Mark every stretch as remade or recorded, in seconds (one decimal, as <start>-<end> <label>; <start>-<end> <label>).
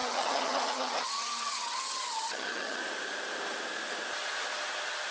0.0-2.8 remade; 2.8-5.1 recorded